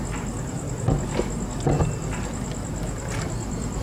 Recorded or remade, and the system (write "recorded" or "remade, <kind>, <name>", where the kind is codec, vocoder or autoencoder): recorded